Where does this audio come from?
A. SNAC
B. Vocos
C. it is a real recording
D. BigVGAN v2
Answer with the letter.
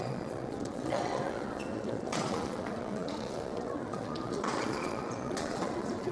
B